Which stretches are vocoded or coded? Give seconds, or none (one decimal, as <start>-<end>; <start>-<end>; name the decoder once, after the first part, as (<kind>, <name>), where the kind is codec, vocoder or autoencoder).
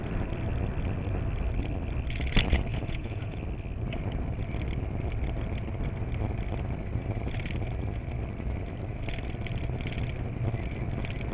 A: 2.7-3.4 (vocoder, Vocos)